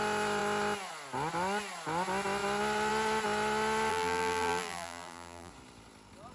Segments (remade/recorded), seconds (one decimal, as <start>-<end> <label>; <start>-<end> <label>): 0.0-3.9 recorded; 3.9-5.5 remade; 5.5-6.3 recorded